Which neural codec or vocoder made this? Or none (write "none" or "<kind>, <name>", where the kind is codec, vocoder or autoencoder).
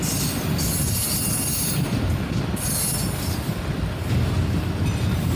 none